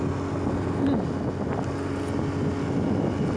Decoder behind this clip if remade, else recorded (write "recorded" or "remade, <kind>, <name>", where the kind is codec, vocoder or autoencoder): recorded